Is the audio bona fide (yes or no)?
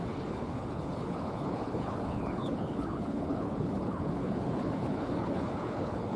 no